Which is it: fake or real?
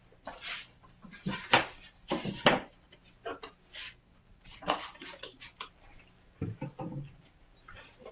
real